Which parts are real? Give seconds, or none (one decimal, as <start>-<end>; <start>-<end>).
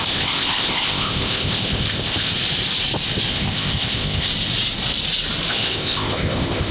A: 2.3-3.3; 4.3-5.5